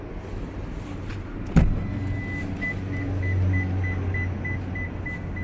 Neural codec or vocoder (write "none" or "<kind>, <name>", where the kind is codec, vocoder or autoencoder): none